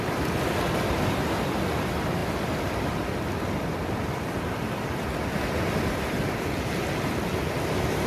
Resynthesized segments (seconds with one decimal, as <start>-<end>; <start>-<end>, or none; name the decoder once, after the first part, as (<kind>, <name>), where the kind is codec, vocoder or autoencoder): none